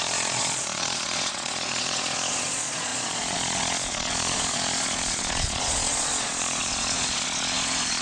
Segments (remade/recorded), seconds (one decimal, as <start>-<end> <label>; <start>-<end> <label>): 0.0-8.0 remade